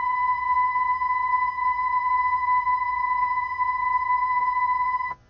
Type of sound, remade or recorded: remade